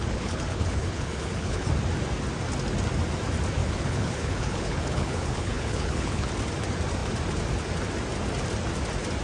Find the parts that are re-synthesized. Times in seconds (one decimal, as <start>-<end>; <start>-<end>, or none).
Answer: 0.0-1.7; 3.6-6.3